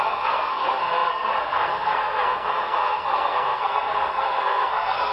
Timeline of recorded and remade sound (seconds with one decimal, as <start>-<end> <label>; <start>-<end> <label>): 0.0-5.1 remade